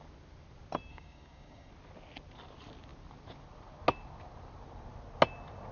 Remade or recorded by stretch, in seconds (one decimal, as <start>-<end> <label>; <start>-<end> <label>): 0.0-0.9 recorded; 0.9-1.7 remade; 1.7-5.7 recorded